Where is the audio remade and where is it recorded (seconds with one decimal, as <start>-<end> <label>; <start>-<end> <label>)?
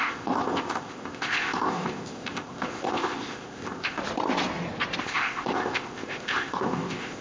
0.0-4.0 remade; 4.0-5.0 recorded; 5.0-7.2 remade